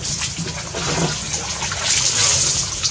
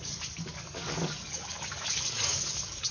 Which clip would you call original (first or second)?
first